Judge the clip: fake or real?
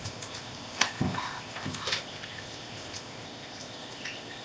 fake